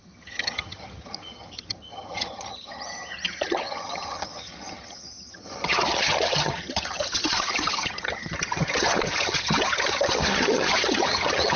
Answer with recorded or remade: remade